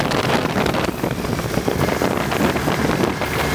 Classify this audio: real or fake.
fake